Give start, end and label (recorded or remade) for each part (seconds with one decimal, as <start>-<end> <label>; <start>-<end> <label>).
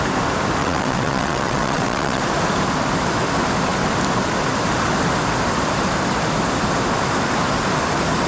0.0-0.6 recorded; 0.6-2.2 remade; 2.2-8.3 recorded